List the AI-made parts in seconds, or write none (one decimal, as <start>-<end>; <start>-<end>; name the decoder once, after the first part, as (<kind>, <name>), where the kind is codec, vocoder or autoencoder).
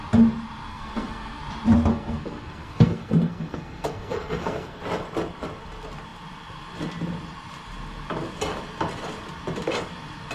0.7-1.4 (codec, SNAC); 1.9-4.8